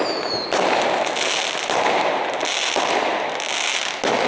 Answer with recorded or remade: recorded